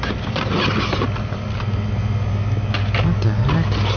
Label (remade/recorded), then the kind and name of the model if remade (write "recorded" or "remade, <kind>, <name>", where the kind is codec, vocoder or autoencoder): recorded